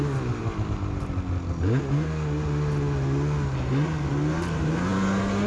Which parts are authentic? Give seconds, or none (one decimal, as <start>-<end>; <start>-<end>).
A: 0.0-5.5